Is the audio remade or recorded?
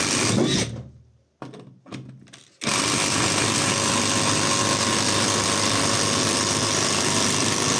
recorded